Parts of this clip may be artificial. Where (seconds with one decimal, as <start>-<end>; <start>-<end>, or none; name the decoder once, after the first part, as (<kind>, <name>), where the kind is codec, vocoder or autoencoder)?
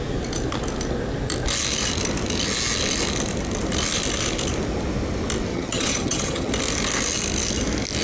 5.5-6.5 (vocoder, HiFi-GAN)